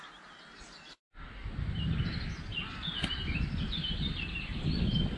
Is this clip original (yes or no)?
yes